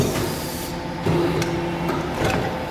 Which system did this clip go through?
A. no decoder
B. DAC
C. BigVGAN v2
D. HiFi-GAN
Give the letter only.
A